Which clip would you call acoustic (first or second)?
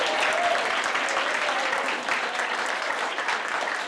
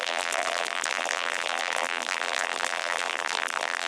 first